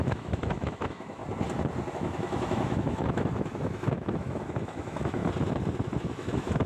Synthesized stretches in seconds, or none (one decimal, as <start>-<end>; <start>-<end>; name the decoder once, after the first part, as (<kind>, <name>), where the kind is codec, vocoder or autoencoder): 0.0-1.2 (autoencoder, DAC-VAE); 1.9-5.2; 6.0-6.7